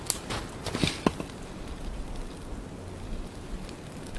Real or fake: real